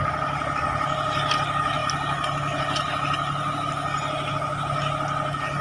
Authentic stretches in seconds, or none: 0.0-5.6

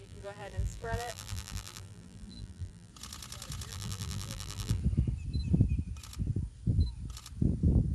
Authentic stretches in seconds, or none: 2.9-3.7; 4.8-7.9